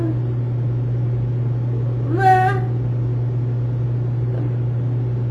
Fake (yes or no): no